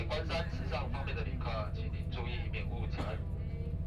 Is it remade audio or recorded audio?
recorded